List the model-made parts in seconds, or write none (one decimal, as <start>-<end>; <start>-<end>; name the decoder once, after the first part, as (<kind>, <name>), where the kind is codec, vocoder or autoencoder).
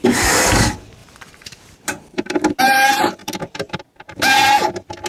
1.0-2.6 (vocoder, BigVGAN v2); 3.2-4.2